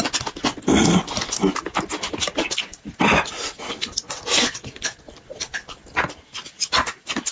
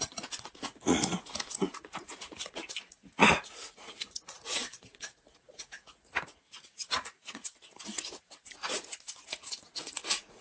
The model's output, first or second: second